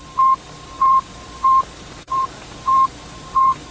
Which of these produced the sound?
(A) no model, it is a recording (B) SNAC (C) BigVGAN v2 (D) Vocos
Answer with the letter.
A